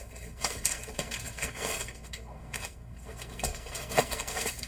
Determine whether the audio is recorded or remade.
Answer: remade